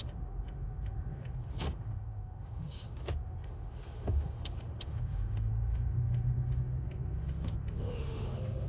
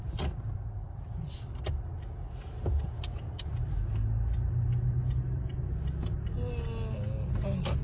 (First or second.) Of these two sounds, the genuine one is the second